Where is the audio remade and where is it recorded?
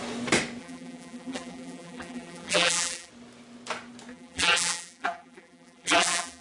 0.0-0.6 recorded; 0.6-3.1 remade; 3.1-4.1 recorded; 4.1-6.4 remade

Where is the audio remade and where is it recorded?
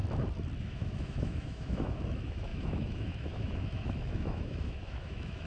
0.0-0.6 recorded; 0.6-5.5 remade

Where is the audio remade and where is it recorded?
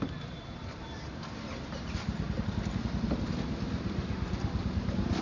0.0-0.6 recorded; 0.6-3.1 remade; 3.1-5.2 recorded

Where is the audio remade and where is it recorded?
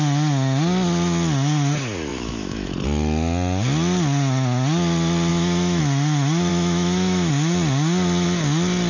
0.0-2.1 recorded; 2.1-2.7 remade; 2.7-5.3 recorded; 5.3-5.8 remade; 5.8-6.5 recorded; 6.5-7.3 remade; 7.3-8.9 recorded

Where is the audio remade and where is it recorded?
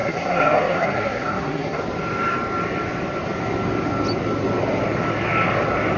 0.0-1.8 remade; 1.8-6.0 recorded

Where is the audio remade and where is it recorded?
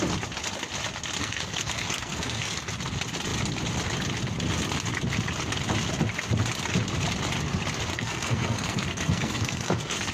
0.0-1.2 recorded; 1.2-2.7 remade; 2.7-7.9 recorded; 7.9-10.1 remade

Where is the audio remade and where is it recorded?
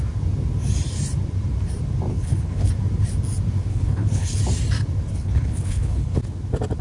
0.0-2.1 recorded; 2.1-2.7 remade; 2.7-3.7 recorded; 3.7-4.4 remade; 4.4-5.1 recorded; 5.1-6.2 remade; 6.2-6.8 recorded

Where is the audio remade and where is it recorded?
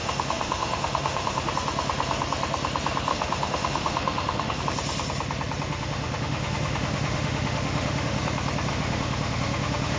0.0-1.5 remade; 1.5-3.1 recorded; 3.1-4.6 remade; 4.6-5.7 recorded; 5.7-8.2 remade; 8.2-8.7 recorded; 8.7-10.0 remade